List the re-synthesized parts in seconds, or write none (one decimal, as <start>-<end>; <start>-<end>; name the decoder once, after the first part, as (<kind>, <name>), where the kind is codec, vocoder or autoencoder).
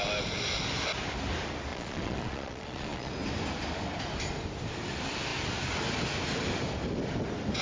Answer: 1.7-3.1 (vocoder, Vocos)